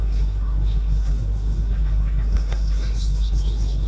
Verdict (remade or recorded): remade